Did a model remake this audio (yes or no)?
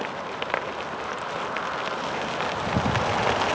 no